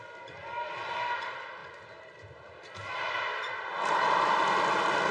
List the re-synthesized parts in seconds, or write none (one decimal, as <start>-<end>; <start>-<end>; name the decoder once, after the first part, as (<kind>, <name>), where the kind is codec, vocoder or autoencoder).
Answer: none